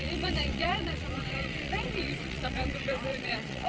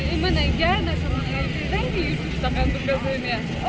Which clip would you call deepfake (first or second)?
first